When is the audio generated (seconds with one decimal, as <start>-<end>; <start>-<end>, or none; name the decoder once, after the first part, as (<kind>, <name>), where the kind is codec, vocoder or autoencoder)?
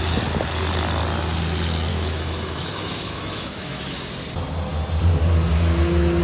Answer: 1.9-4.1 (autoencoder, DAC-VAE)